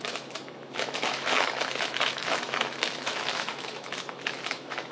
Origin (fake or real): fake